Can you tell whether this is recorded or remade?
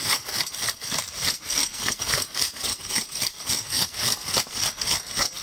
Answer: remade